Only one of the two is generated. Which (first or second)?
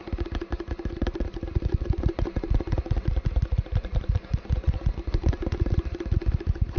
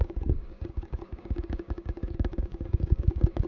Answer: second